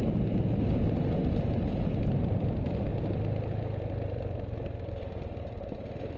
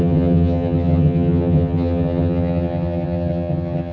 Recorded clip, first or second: first